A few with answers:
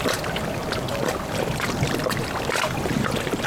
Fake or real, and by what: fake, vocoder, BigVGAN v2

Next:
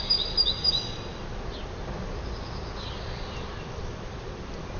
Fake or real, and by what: real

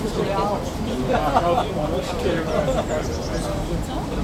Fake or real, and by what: fake, vocoder, BigVGAN v2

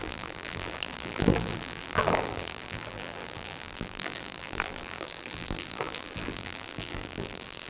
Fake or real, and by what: fake, vocoder, BigVGAN v2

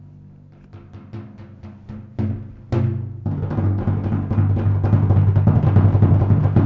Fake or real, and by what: real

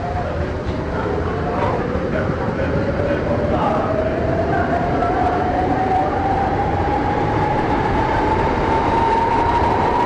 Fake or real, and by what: fake, vocoder, BigVGAN v2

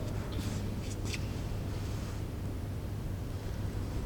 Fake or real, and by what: real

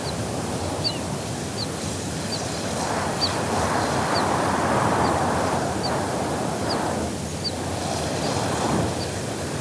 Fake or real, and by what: real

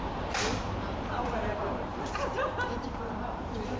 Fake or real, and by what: fake, vocoder, BigVGAN v2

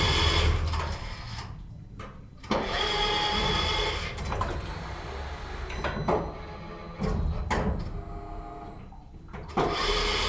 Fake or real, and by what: real